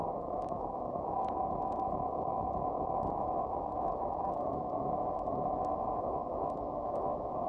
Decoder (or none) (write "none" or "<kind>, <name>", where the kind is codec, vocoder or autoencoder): autoencoder, DAC-VAE